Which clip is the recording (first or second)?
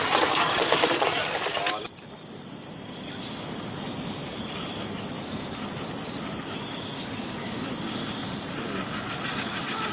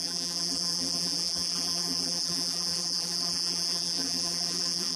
first